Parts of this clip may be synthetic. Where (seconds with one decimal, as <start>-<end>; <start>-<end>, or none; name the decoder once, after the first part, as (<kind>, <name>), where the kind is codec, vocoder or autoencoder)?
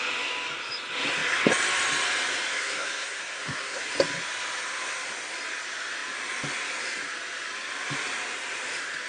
2.5-3.8 (codec, SNAC)